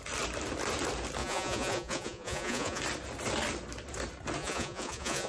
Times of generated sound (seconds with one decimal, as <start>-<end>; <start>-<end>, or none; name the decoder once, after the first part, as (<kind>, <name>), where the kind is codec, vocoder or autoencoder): 1.2-2.8 (vocoder, Vocos); 4.4-5.3